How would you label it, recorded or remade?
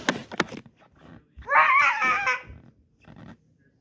recorded